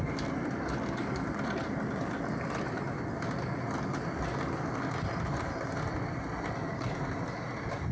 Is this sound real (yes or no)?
yes